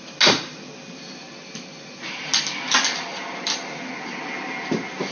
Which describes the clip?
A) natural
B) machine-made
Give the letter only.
A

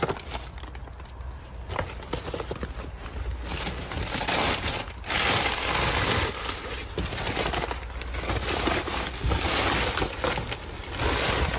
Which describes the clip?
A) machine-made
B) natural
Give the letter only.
B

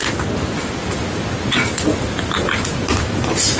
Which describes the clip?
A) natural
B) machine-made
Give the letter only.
A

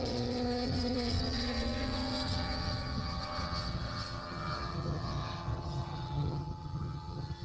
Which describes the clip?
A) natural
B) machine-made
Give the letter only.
B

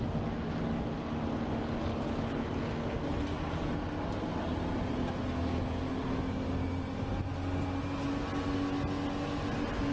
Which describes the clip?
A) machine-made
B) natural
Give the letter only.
B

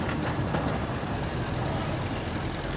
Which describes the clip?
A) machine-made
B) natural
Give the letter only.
B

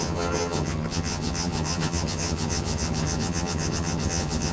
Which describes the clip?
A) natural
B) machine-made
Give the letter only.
B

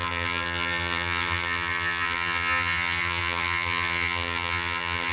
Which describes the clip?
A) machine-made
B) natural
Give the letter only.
A